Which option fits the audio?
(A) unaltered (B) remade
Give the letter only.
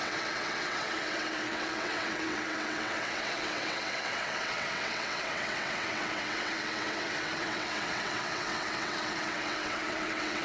B